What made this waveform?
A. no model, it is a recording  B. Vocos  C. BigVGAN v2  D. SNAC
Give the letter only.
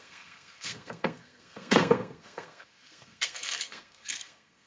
D